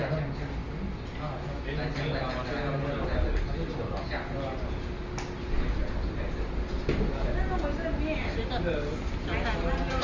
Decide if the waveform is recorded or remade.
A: recorded